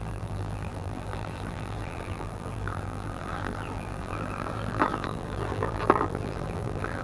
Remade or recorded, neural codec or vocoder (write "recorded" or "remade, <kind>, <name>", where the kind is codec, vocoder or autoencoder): remade, vocoder, BigVGAN v2